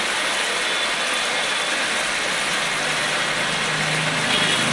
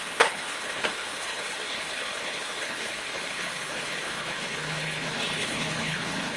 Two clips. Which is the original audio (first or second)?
first